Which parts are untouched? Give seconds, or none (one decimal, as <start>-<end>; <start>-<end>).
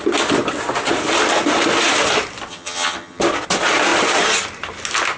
0.0-2.5; 3.2-5.2